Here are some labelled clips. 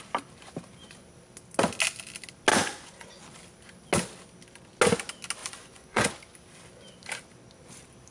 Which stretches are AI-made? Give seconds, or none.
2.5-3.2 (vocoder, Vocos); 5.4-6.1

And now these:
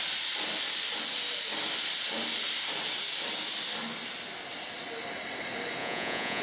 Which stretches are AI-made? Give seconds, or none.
5.8-6.4 (vocoder, Vocos)

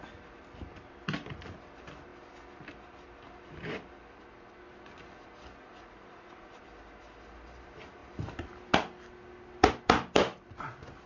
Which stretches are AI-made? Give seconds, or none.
5.6-6.6 (vocoder, Vocos)

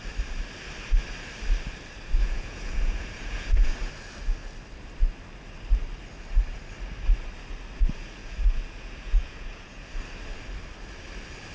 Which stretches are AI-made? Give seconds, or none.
2.2-3.9 (vocoder, Vocos); 8.2-10.0

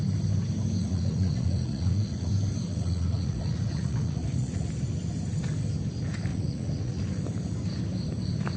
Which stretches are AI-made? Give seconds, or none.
0.8-2.3 (vocoder, Vocos); 2.7-4.7; 6.3-7.0